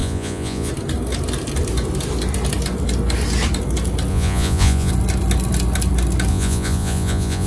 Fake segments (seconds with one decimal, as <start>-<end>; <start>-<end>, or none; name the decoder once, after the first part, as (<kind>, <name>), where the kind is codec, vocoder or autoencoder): 0.0-0.7 (vocoder, Vocos); 4.1-4.9; 6.3-7.5